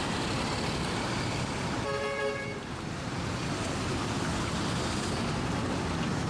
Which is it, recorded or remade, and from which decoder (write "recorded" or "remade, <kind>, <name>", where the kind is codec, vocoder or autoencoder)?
recorded